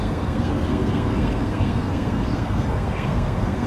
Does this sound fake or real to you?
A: fake